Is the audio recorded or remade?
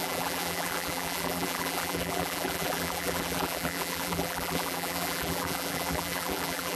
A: remade